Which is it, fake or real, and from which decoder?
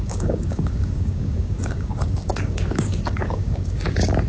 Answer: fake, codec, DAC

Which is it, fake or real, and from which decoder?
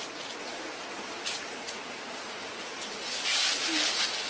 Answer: real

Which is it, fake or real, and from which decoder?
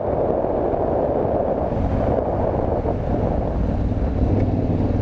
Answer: real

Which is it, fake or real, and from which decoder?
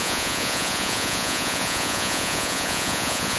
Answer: fake, vocoder, Vocos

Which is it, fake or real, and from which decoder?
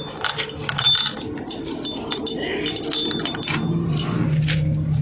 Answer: real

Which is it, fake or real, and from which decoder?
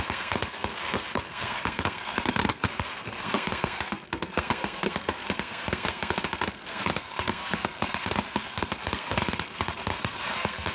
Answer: fake, codec, SNAC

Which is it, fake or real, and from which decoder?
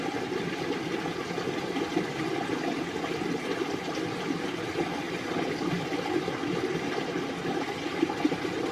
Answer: real